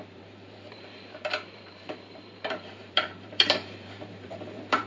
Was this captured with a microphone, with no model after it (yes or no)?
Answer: no